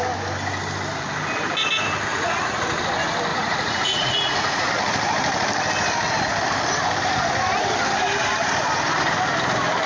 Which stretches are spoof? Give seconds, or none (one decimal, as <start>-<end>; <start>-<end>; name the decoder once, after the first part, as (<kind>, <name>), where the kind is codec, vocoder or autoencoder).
2.1-2.8 (vocoder, Vocos); 3.3-4.7